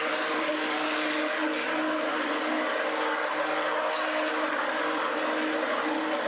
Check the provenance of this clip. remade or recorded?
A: recorded